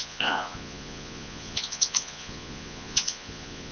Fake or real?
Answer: fake